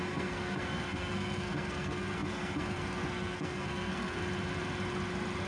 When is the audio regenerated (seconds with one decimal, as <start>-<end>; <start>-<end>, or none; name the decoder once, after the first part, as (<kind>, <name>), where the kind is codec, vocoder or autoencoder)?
0.0-4.2 (codec, SNAC)